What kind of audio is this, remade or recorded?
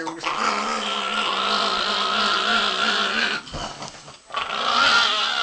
recorded